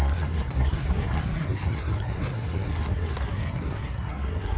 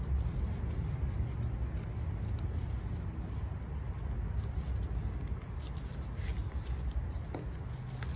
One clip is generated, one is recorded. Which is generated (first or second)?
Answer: first